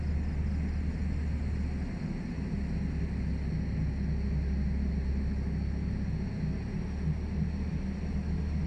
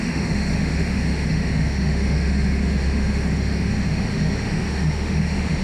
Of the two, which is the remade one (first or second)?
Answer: second